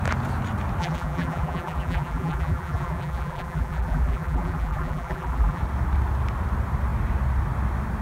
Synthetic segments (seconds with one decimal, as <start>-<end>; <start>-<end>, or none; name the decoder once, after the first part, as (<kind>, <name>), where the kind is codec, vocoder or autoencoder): 0.8-5.6 (vocoder, BigVGAN v2)